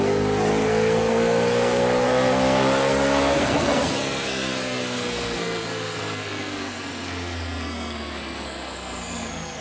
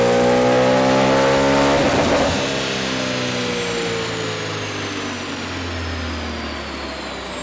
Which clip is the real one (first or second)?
second